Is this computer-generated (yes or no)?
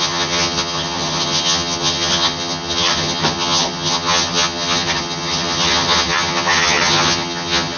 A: yes